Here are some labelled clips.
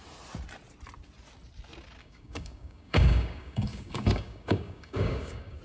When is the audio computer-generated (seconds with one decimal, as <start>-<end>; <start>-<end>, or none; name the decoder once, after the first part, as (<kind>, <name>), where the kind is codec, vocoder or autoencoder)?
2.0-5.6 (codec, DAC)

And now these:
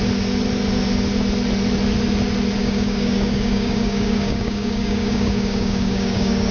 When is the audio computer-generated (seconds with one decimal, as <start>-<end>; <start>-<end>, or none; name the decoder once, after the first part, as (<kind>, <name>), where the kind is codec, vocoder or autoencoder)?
2.6-6.5 (codec, DAC)

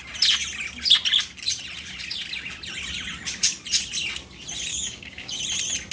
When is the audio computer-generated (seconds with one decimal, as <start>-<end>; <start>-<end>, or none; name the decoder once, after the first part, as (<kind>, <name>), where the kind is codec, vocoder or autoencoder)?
4.7-5.4 (codec, DAC)

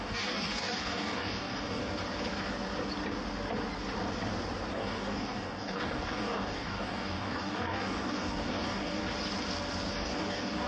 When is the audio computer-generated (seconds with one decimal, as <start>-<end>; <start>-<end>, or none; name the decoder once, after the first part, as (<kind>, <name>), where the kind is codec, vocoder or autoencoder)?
0.0-1.8 (codec, DAC); 4.7-9.0; 9.9-10.7